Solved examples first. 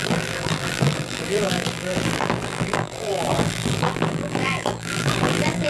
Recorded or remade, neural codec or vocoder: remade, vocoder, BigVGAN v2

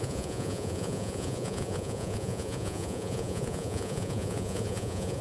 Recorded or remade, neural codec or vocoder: remade, vocoder, Vocos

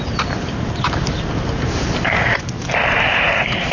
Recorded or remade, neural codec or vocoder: remade, vocoder, BigVGAN v2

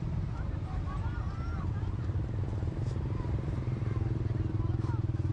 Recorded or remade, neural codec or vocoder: remade, vocoder, BigVGAN v2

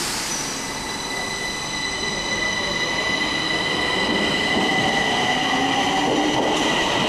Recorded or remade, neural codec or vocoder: recorded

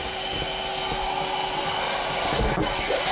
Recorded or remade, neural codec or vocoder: recorded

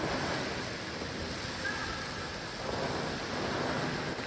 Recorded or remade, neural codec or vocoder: recorded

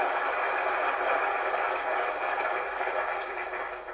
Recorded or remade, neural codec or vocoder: recorded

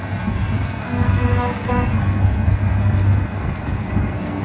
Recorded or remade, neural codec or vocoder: remade, codec, SNAC